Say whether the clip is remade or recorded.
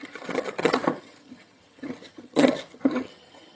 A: remade